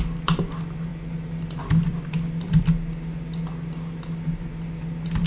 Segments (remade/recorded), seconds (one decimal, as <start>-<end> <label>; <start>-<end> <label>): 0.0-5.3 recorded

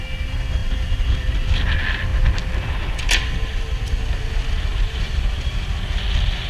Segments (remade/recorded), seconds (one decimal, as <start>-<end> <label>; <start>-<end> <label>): 0.0-4.7 recorded; 4.7-5.7 remade; 5.7-6.5 recorded

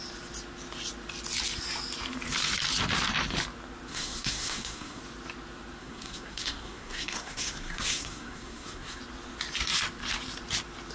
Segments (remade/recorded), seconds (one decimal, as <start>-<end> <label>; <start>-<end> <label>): 0.0-3.9 recorded; 3.9-5.0 remade; 5.0-5.8 recorded; 5.8-9.0 remade; 9.0-10.9 recorded

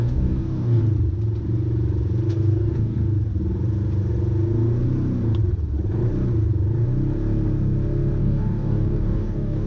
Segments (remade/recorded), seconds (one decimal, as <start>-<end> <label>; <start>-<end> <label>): 0.0-0.8 remade; 0.8-2.3 recorded; 2.3-3.0 remade; 3.0-8.2 recorded; 8.2-9.7 remade

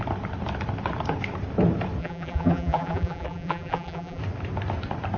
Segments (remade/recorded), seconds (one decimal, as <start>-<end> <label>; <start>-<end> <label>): 0.0-2.0 recorded; 2.0-4.2 remade; 4.2-5.2 recorded

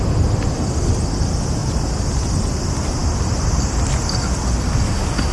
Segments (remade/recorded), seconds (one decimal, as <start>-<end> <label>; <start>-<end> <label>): 0.0-5.3 recorded

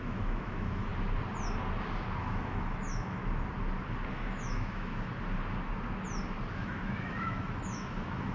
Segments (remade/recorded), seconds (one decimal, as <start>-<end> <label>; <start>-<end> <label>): 0.0-0.9 remade; 0.9-2.2 recorded; 2.2-3.2 remade; 3.2-4.1 recorded; 4.1-5.1 remade; 5.1-6.5 recorded; 6.5-8.3 remade

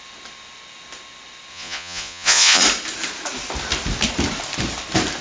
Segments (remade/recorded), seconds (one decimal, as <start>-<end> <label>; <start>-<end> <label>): 0.0-1.5 recorded; 1.5-2.6 remade; 2.6-5.2 recorded